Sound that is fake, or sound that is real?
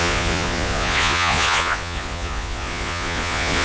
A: fake